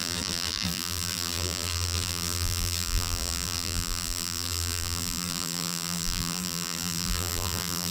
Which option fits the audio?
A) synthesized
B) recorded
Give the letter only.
A